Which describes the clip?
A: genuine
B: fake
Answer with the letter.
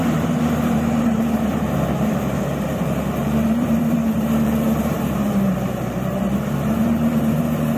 B